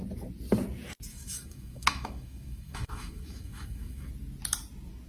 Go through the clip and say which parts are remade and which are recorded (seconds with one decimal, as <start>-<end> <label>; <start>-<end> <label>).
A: 0.0-1.1 recorded; 1.1-4.1 remade; 4.1-5.1 recorded